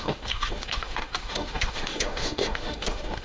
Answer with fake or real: fake